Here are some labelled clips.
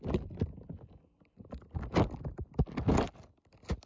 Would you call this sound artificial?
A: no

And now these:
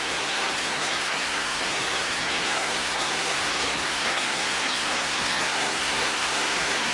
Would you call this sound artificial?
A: yes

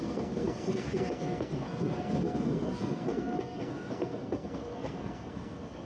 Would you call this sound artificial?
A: yes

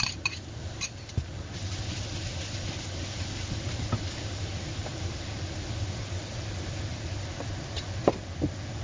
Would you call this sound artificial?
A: no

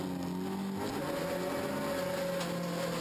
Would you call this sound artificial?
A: no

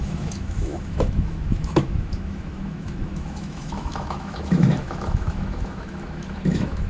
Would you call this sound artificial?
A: yes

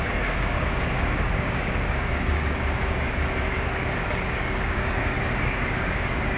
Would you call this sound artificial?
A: yes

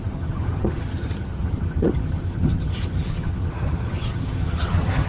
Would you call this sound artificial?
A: yes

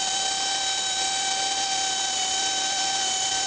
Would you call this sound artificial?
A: yes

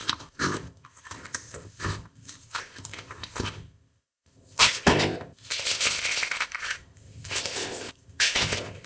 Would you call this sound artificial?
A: yes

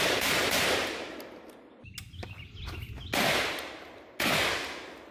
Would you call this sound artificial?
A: no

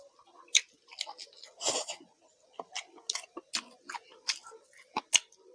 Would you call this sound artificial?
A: no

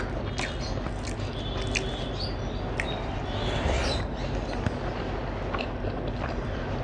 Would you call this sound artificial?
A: no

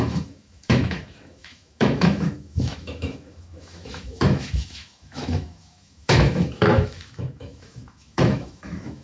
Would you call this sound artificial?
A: yes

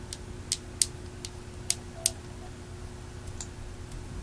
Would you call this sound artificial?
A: no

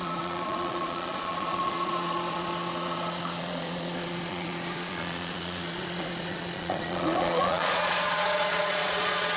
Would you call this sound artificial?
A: yes